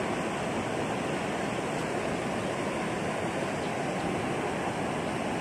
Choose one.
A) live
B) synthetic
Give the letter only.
A